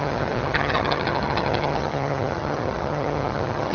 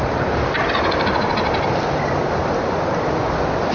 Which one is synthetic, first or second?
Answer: first